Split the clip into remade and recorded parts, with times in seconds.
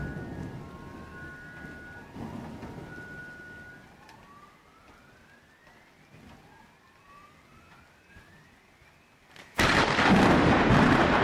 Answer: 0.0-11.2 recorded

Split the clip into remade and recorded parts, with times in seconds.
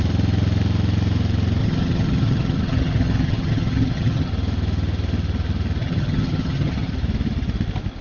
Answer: 0.0-1.6 recorded; 1.6-4.3 remade; 4.3-5.8 recorded; 5.8-6.9 remade; 6.9-8.0 recorded